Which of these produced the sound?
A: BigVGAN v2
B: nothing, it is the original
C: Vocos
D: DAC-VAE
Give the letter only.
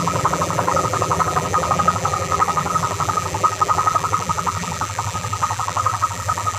A